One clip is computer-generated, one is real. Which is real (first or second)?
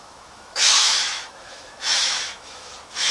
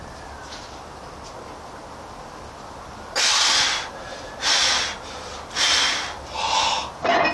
second